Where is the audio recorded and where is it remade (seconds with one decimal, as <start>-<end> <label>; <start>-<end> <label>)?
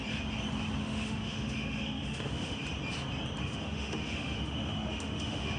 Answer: 0.0-0.8 recorded; 0.8-2.6 remade; 2.6-3.4 recorded; 3.4-5.6 remade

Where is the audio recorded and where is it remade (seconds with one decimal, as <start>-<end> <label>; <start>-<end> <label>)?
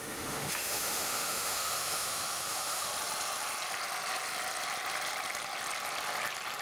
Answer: 0.0-2.9 remade; 2.9-6.6 recorded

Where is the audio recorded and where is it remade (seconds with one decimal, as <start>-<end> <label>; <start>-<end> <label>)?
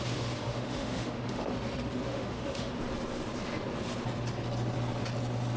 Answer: 0.0-0.5 recorded; 0.5-1.5 remade; 1.5-2.1 recorded; 2.1-2.7 remade; 2.7-5.6 recorded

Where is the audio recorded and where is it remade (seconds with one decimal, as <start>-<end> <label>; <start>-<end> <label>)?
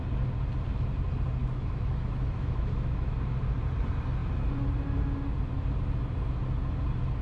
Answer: 0.0-1.4 recorded; 1.4-3.3 remade; 3.3-7.2 recorded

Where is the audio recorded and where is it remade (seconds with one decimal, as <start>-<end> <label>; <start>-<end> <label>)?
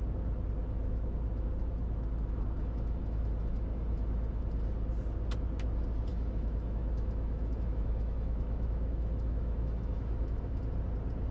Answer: 0.0-0.6 recorded; 0.6-4.4 remade; 4.4-6.1 recorded; 6.1-10.6 remade; 10.6-11.3 recorded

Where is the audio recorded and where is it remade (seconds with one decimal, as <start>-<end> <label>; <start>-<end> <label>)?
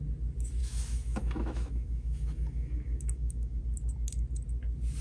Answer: 0.0-0.6 recorded; 0.6-3.6 remade; 3.6-5.0 recorded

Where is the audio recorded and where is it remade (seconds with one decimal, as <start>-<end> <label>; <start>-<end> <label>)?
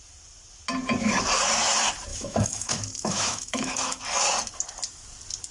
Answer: 0.0-2.1 recorded; 2.1-4.0 remade; 4.0-5.5 recorded